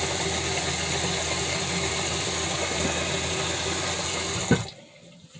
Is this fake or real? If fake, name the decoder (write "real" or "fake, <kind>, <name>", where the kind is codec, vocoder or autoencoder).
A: real